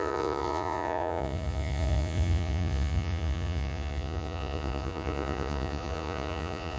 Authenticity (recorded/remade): remade